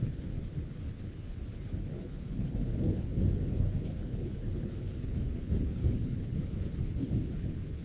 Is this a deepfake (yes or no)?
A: yes